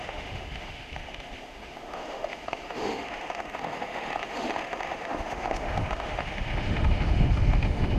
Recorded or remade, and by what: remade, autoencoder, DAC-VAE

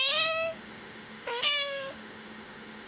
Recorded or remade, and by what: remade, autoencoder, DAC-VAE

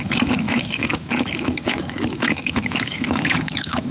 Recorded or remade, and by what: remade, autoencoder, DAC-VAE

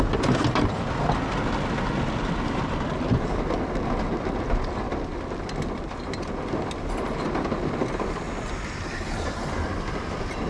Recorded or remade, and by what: recorded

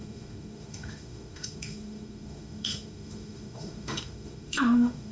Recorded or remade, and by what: remade, autoencoder, DAC-VAE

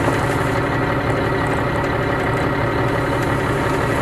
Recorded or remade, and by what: recorded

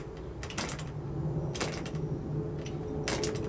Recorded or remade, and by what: recorded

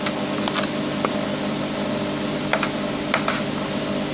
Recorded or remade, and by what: recorded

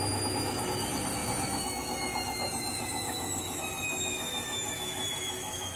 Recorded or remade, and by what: remade, autoencoder, DAC-VAE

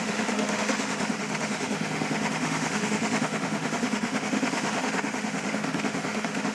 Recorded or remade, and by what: remade, autoencoder, DAC-VAE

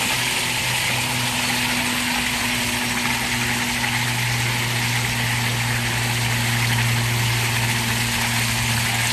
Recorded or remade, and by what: recorded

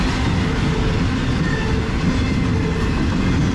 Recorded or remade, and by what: recorded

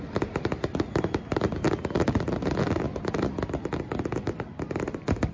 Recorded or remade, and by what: recorded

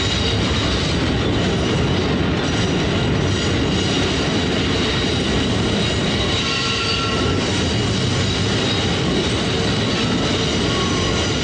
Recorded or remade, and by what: recorded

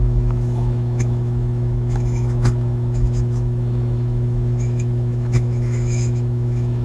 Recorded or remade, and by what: remade, autoencoder, DAC-VAE